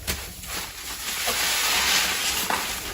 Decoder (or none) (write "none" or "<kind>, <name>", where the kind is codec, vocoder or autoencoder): none